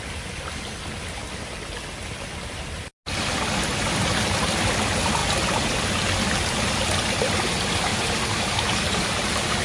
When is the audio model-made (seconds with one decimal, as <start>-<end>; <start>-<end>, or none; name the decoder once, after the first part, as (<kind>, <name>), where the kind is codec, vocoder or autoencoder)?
7.9-9.6 (vocoder, BigVGAN v2)